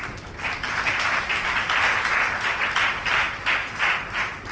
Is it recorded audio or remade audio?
recorded